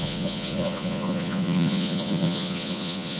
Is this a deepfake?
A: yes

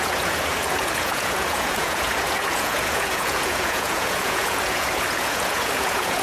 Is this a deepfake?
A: yes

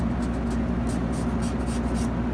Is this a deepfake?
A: no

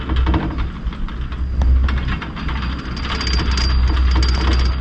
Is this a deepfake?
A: no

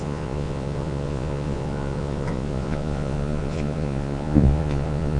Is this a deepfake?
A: yes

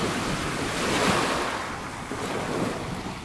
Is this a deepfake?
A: no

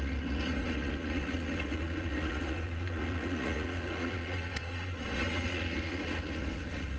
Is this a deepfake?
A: yes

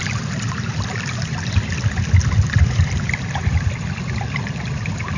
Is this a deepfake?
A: no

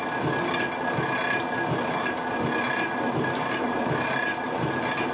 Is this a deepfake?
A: no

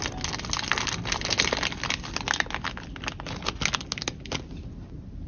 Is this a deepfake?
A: no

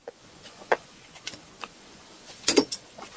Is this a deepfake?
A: yes